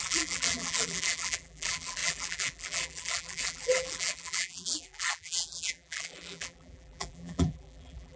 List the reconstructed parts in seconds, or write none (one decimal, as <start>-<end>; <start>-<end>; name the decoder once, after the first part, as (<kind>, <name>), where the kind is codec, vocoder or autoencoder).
0.0-8.2 (vocoder, BigVGAN v2)